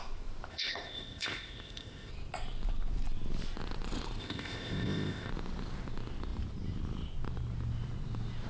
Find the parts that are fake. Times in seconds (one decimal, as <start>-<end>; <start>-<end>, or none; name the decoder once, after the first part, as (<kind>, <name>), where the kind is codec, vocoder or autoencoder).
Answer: 0.5-2.1 (codec, ZipCodec); 4.2-5.3